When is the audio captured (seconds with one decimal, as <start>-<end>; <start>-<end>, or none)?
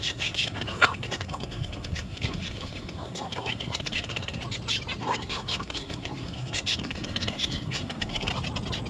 4.4-5.0; 8.3-8.9